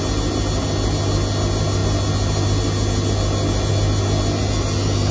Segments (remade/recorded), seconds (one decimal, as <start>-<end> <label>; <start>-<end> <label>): 0.0-5.1 recorded